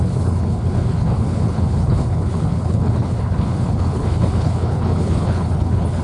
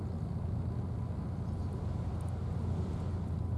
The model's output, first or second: first